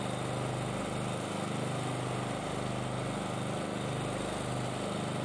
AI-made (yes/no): no